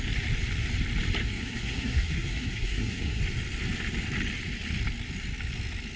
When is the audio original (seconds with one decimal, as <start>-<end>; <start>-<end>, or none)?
0.0-1.2; 3.2-6.0